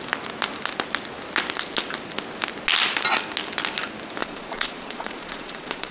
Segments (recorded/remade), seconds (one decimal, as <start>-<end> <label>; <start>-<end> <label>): 0.0-4.2 recorded; 4.2-5.9 remade